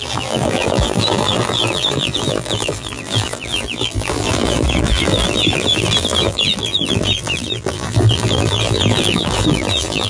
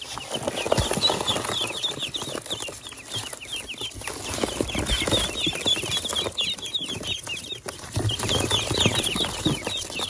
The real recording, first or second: second